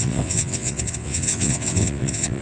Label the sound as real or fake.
fake